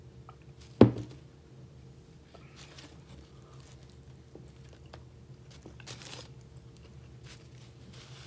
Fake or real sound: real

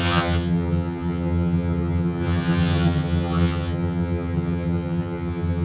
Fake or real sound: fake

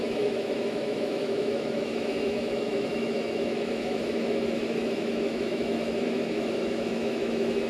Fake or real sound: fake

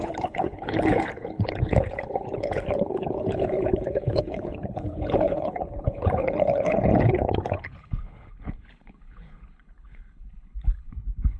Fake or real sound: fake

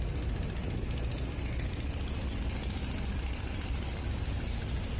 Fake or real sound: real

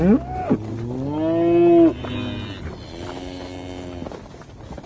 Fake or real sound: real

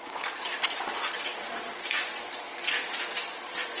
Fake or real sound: fake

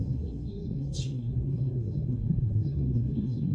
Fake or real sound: fake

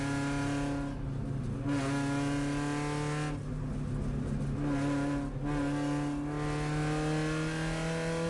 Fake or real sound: real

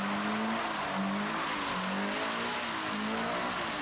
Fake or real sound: real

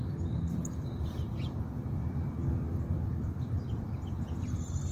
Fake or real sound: fake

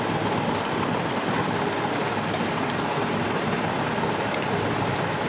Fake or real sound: real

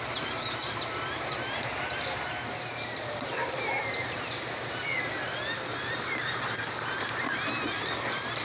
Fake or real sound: fake